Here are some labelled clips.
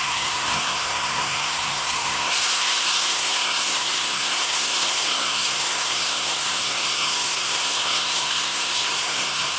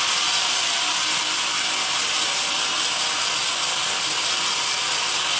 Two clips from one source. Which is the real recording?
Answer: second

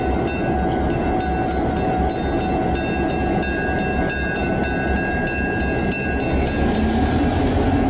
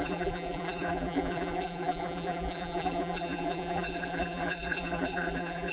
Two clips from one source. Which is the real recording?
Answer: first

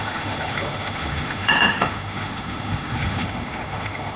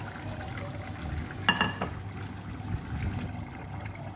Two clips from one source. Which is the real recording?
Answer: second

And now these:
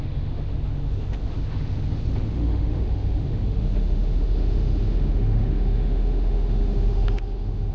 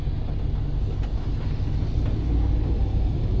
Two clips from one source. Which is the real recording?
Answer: second